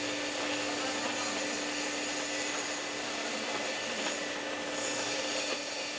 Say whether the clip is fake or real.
real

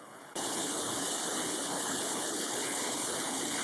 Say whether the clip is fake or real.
fake